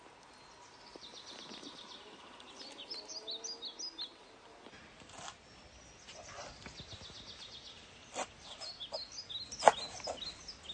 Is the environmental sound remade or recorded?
recorded